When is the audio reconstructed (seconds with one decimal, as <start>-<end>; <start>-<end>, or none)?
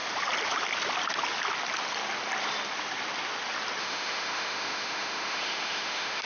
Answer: 3.8-6.3